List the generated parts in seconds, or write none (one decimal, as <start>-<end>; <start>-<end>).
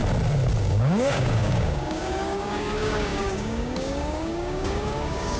0.6-5.4